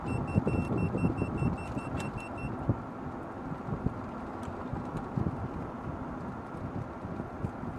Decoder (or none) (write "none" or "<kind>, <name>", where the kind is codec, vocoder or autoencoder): none